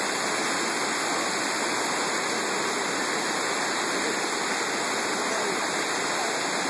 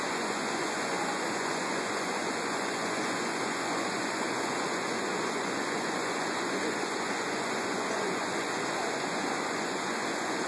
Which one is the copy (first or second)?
second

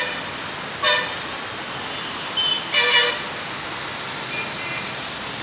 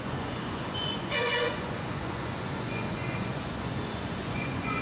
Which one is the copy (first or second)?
second